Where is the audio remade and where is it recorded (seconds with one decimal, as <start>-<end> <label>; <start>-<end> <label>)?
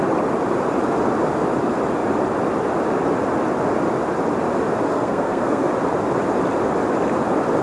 0.0-4.9 recorded; 4.9-5.7 remade; 5.7-7.6 recorded